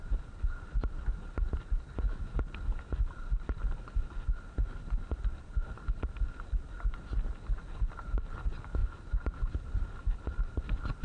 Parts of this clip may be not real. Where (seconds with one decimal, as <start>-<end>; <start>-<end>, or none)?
none